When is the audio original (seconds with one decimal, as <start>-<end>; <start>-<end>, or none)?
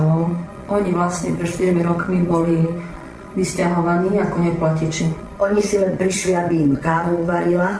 3.6-5.0